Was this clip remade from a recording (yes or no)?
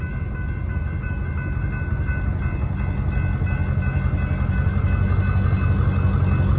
no